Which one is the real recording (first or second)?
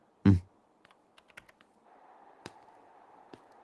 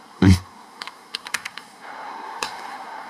first